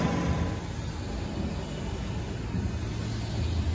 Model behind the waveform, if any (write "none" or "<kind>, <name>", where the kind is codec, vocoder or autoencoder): none